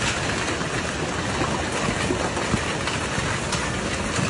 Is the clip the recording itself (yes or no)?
yes